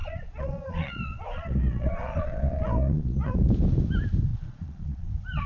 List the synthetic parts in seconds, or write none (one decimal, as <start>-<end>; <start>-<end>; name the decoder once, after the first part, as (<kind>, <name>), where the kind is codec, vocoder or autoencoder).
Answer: 0.0-3.3 (vocoder, Vocos); 4.3-5.1